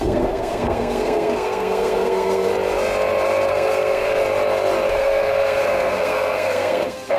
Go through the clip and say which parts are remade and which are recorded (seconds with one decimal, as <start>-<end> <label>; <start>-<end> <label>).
0.0-2.5 remade; 2.5-3.5 recorded; 3.5-4.2 remade; 4.2-4.9 recorded; 4.9-7.2 remade